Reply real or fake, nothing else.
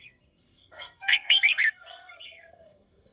fake